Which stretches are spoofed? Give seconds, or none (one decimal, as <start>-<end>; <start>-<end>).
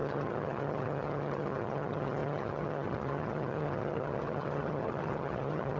0.0-5.8